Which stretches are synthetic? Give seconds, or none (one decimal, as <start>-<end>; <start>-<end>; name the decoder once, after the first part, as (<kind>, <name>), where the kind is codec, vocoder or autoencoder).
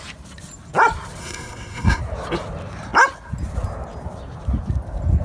1.2-2.0 (codec, SNAC)